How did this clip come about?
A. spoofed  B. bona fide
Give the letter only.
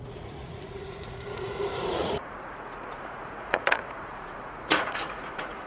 A